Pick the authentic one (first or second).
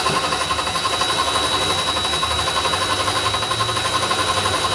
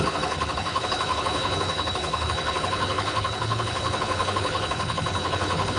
first